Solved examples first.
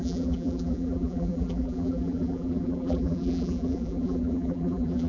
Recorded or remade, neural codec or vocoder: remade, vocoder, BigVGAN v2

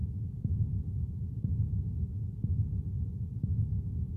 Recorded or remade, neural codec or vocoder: recorded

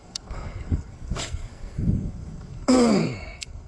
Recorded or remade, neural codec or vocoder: remade, codec, SNAC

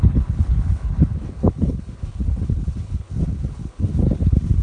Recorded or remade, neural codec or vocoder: remade, codec, HILCodec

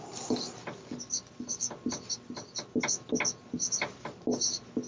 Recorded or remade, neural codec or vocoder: recorded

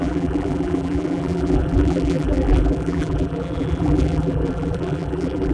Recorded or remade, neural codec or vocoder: remade, vocoder, BigVGAN v2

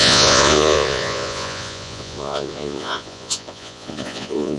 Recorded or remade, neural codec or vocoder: remade, vocoder, Vocos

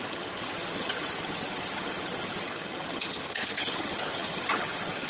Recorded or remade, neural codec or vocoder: remade, vocoder, HiFi-GAN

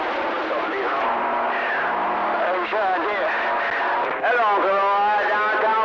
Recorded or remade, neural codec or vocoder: recorded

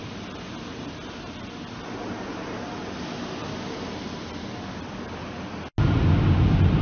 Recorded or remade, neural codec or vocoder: recorded